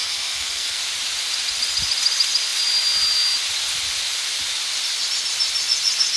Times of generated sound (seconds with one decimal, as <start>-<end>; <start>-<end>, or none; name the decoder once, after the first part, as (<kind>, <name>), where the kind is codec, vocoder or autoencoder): 0.0-0.8 (codec, SNAC)